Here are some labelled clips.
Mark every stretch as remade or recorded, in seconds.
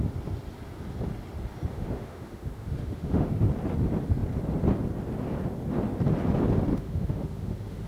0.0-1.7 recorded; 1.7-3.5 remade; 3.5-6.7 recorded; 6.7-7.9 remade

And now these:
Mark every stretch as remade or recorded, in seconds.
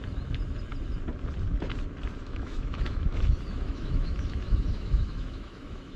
0.0-2.2 recorded; 2.2-6.0 remade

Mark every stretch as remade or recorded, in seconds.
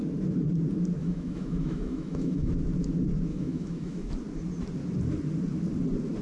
0.0-1.0 recorded; 1.0-2.5 remade; 2.5-3.3 recorded; 3.3-4.1 remade; 4.1-6.2 recorded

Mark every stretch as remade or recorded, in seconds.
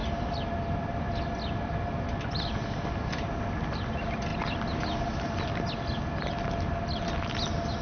0.0-7.8 recorded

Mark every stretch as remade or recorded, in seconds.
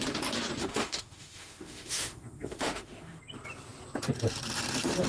0.0-0.6 recorded; 0.6-3.2 remade; 3.2-5.1 recorded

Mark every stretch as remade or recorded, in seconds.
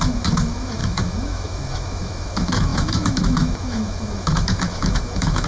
0.0-5.5 remade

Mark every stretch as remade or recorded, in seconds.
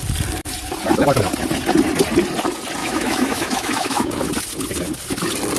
0.0-2.8 recorded; 2.8-4.1 remade; 4.1-5.6 recorded